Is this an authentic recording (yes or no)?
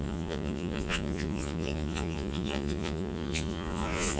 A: no